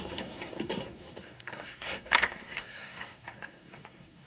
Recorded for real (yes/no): no